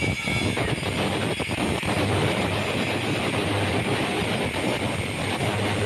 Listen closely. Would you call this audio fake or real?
real